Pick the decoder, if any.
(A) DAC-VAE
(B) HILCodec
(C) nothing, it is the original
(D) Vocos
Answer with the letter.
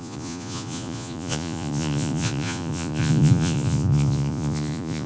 D